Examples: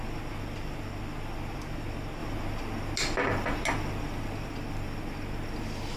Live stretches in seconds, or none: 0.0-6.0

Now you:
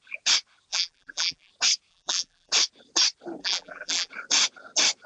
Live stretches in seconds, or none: 0.0-0.7; 1.5-1.9; 2.5-3.4; 4.1-5.1

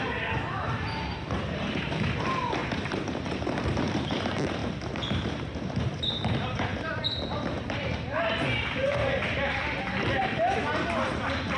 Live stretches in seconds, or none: 8.8-10.2

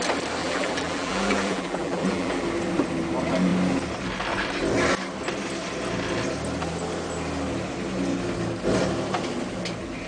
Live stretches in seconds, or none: 0.0-0.4; 2.4-10.1

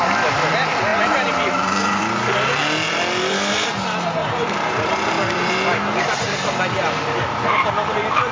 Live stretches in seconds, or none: 0.0-0.9; 2.0-4.2; 4.9-8.3

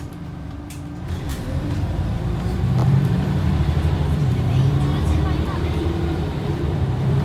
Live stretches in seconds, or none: none

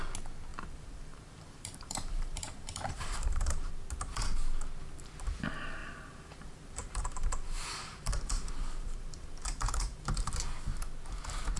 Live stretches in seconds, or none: 0.0-0.5; 3.7-5.8; 10.3-11.6